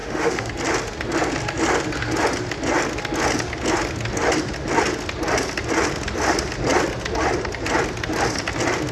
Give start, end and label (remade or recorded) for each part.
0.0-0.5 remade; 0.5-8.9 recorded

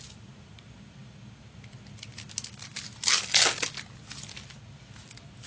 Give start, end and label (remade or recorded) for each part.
0.0-5.5 recorded

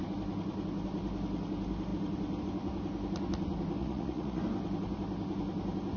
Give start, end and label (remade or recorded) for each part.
0.0-3.8 recorded; 3.8-4.4 remade; 4.4-6.0 recorded